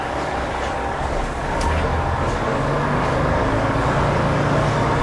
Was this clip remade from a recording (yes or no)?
yes